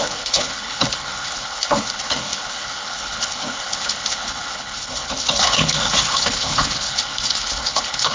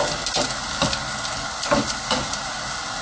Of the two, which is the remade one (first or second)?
first